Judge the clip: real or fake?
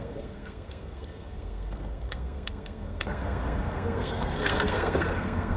fake